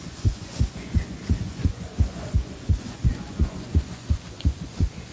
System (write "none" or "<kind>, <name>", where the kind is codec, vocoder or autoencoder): vocoder, Vocos